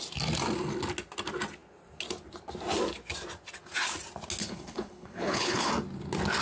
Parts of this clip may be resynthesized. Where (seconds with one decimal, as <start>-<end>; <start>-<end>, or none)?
4.4-5.7